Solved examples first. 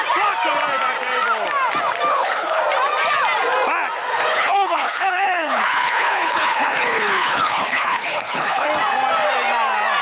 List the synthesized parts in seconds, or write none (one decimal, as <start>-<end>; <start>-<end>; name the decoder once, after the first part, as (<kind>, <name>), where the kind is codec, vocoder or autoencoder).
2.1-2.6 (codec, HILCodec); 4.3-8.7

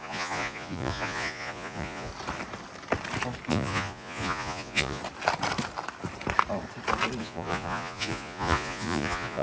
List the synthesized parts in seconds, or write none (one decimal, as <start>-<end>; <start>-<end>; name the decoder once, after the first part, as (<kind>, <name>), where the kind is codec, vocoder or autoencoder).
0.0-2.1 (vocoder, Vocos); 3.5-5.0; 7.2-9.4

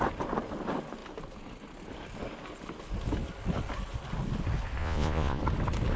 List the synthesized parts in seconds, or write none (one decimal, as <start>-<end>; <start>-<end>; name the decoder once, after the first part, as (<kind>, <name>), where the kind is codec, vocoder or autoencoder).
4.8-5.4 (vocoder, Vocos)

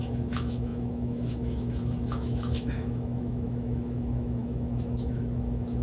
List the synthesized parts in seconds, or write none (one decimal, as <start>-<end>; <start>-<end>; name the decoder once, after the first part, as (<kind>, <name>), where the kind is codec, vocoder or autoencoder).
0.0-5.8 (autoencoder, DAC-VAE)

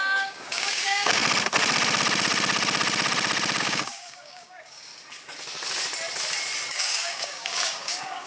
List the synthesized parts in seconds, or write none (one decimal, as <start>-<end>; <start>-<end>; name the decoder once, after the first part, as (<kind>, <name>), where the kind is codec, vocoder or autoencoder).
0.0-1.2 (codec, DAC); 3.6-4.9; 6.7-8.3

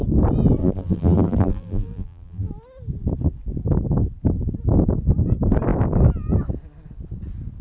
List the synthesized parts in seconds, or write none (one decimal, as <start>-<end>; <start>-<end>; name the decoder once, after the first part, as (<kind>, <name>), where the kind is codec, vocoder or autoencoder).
0.6-2.5 (vocoder, BigVGAN v2)

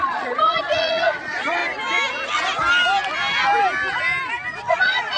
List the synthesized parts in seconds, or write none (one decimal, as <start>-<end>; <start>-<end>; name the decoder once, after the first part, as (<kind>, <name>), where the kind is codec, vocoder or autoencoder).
0.0-1.6 (vocoder, Vocos); 4.7-5.2

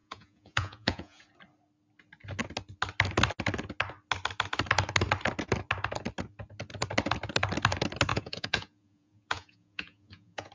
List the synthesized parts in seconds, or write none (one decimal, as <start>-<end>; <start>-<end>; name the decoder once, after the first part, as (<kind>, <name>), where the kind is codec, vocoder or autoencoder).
0.0-1.2 (vocoder, Vocos); 8.1-10.5